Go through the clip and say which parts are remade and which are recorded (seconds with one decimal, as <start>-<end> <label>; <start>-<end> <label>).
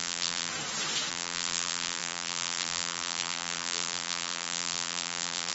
0.0-0.5 remade; 0.5-1.1 recorded; 1.1-5.5 remade